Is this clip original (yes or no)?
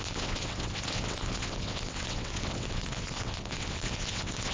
no